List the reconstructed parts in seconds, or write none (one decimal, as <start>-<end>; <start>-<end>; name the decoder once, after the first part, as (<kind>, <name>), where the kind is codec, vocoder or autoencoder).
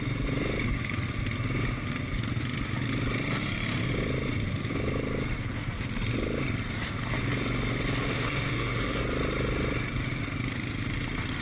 8.0-9.0 (autoencoder, DAC-VAE)